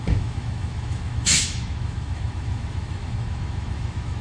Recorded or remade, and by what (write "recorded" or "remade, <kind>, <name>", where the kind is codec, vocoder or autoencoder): remade, autoencoder, DAC-VAE